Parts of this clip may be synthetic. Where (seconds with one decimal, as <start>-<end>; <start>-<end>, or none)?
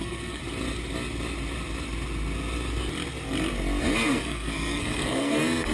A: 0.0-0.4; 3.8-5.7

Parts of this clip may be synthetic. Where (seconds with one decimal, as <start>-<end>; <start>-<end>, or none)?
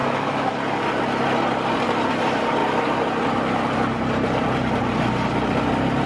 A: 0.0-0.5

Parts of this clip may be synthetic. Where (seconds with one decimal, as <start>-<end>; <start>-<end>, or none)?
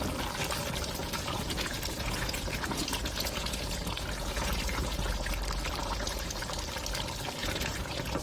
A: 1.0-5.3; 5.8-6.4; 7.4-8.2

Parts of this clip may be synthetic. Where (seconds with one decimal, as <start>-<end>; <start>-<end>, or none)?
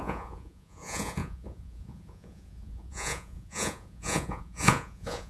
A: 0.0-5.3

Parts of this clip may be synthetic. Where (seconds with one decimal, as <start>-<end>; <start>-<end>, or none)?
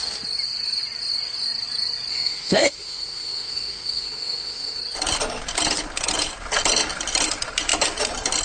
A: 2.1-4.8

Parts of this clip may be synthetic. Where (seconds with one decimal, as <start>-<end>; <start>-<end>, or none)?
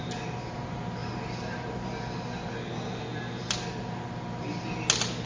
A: none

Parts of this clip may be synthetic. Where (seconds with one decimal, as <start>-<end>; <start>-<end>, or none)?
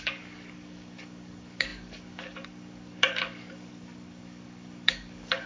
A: 0.0-5.5